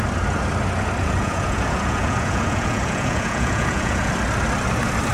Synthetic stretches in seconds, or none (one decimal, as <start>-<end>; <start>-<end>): 1.0-4.1